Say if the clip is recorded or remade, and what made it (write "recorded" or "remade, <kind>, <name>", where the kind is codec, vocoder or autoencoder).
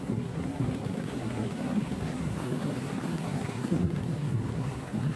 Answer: remade, codec, SNAC